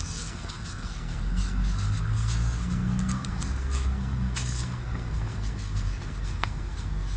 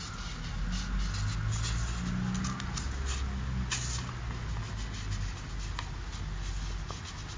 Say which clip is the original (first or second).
second